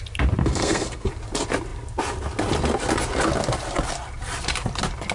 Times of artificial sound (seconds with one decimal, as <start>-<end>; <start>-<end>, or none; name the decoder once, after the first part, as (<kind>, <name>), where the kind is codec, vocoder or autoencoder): 0.4-1.1 (codec, SNAC)